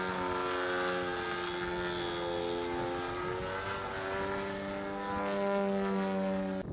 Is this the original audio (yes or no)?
yes